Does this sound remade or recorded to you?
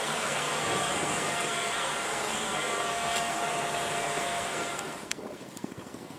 remade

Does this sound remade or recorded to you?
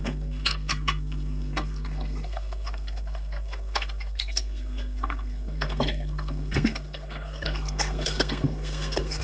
remade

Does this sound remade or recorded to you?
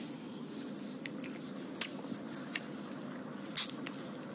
recorded